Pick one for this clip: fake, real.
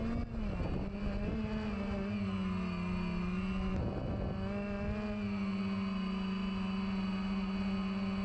real